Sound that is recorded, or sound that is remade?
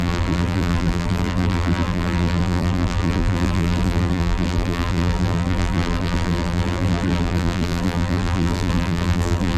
remade